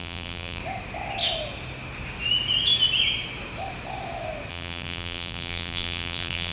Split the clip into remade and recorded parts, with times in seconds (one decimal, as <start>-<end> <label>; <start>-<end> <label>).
0.0-0.6 remade; 0.6-4.5 recorded; 4.5-6.5 remade